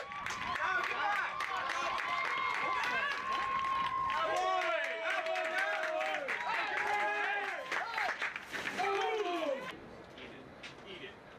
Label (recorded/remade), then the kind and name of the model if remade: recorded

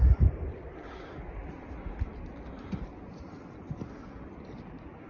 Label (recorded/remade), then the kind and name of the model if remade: recorded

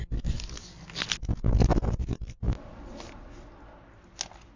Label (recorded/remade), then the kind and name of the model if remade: recorded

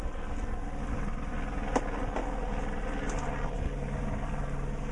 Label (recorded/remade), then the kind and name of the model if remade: recorded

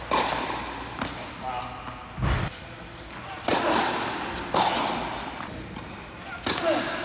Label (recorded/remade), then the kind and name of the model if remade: recorded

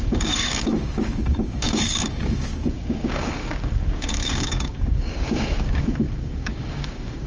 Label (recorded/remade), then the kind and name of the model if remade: remade, codec, DAC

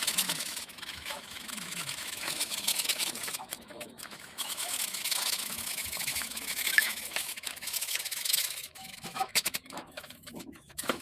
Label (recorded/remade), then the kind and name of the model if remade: remade, autoencoder, DAC-VAE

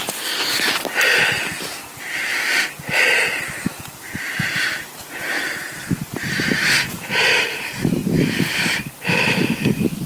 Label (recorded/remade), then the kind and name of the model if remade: recorded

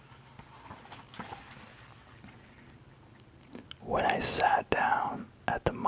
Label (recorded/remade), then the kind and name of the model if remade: recorded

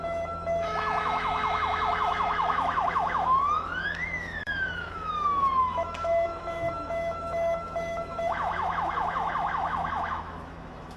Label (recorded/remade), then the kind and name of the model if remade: remade, autoencoder, DAC-VAE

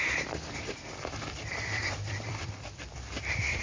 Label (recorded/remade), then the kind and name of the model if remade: remade, vocoder, BigVGAN v2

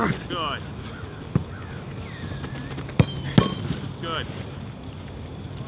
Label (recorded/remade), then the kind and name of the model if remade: recorded